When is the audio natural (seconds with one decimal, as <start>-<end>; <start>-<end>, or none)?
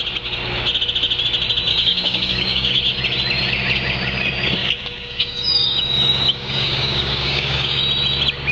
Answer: 0.0-1.7; 2.8-4.6; 7.8-8.5